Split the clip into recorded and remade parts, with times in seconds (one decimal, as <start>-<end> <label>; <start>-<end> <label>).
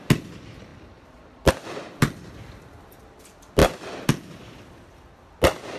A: 0.0-0.7 recorded; 0.7-1.5 remade; 1.5-5.8 recorded